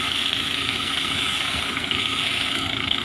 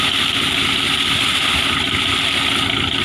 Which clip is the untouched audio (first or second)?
second